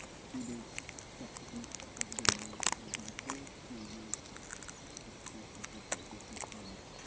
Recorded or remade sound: recorded